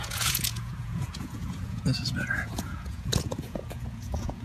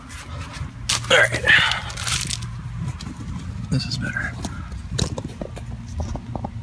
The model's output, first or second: first